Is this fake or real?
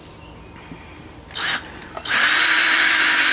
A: real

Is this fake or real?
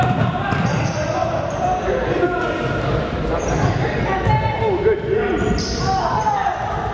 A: fake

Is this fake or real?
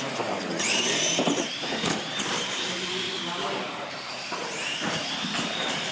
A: fake